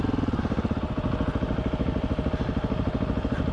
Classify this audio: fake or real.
real